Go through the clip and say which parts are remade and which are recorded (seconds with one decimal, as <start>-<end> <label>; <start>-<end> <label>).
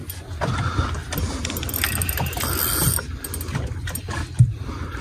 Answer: 0.0-5.0 recorded